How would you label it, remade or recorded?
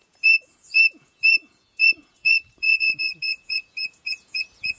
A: remade